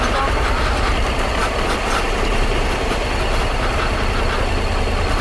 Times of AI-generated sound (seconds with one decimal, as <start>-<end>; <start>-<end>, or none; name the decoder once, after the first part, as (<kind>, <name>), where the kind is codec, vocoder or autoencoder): none